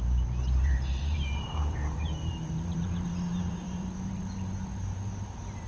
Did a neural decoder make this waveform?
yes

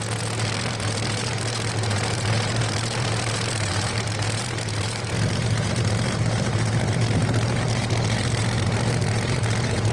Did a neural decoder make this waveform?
yes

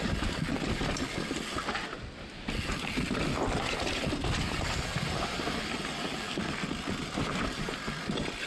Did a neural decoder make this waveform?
no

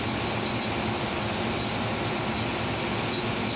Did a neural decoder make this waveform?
no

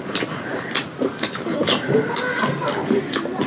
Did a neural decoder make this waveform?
no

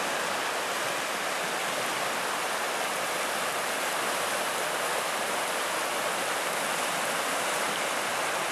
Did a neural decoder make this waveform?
no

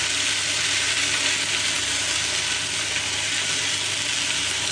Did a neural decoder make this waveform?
no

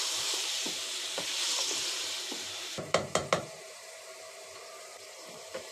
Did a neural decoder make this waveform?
yes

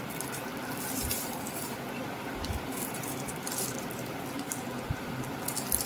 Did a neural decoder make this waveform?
yes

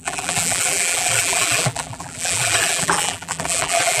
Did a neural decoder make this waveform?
yes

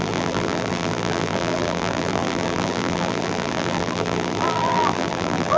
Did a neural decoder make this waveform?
yes